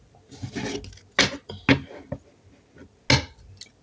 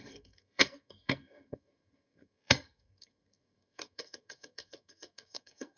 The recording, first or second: first